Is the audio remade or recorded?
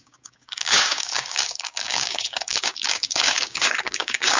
remade